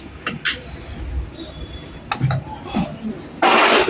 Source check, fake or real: real